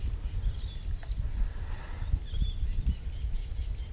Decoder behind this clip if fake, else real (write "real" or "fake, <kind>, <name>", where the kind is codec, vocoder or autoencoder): real